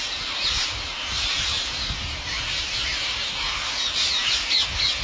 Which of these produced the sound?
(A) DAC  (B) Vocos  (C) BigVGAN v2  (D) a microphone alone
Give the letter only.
D